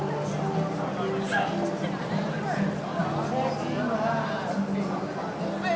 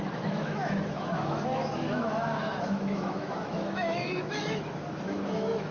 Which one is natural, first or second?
first